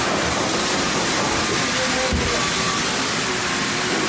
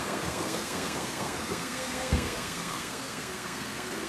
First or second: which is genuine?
first